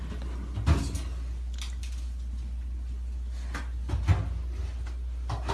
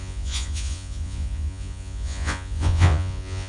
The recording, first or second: first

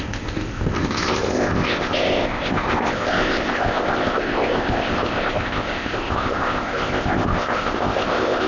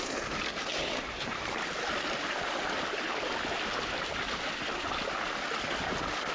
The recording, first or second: second